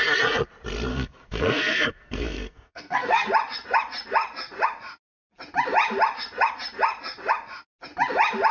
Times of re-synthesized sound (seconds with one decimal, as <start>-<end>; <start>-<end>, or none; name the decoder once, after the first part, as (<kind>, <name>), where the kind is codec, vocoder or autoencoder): 0.9-3.3 (codec, SNAC)